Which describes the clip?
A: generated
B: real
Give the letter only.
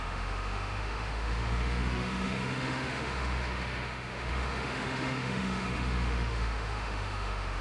A